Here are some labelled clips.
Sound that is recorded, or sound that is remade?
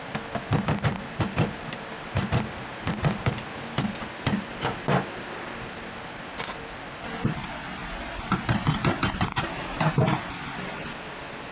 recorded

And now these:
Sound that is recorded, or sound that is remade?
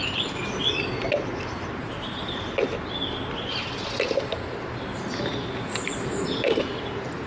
recorded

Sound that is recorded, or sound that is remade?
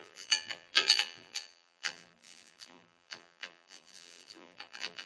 remade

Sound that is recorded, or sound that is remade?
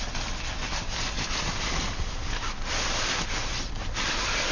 recorded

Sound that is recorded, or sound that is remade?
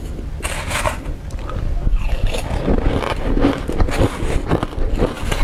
recorded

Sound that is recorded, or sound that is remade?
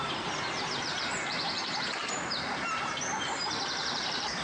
remade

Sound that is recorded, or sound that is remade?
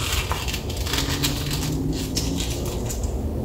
recorded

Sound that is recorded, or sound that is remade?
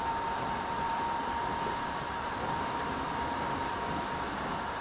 remade